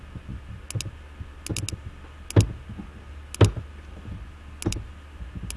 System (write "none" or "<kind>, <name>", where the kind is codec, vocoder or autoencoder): none